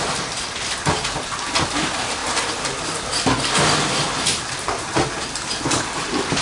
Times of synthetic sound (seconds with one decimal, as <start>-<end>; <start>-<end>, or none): none

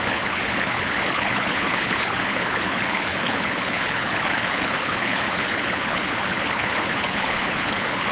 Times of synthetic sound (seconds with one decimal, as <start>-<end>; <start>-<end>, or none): 0.0-8.1

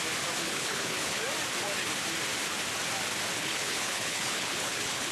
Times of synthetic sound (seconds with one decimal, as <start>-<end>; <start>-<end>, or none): 0.4-1.2; 3.4-5.1

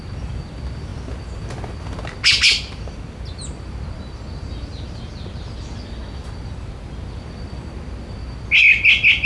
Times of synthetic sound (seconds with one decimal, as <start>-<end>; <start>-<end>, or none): none

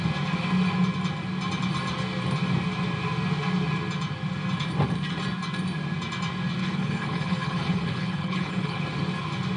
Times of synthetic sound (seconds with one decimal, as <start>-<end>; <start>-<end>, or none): 6.6-8.8

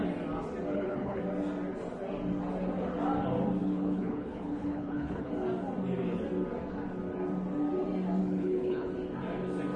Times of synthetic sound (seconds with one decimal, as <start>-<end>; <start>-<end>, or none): 0.7-1.2; 3.6-5.3; 8.2-8.9

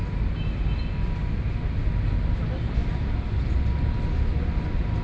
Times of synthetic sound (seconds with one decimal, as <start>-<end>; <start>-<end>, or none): none